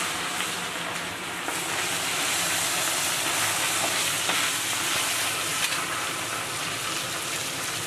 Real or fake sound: real